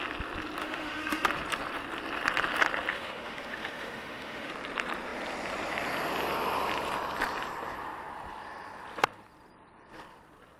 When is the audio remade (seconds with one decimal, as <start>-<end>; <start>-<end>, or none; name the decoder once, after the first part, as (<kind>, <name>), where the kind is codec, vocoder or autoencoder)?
0.6-1.3 (autoencoder, DAC-VAE); 2.9-4.5

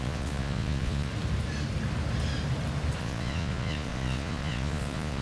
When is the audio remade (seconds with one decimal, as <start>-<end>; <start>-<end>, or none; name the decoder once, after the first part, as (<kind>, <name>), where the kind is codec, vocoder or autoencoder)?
0.0-1.1 (vocoder, Vocos); 3.0-5.2